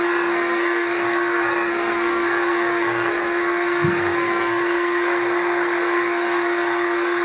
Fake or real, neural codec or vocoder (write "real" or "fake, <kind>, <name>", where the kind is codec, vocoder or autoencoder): fake, codec, SNAC